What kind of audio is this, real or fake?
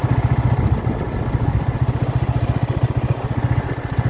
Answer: real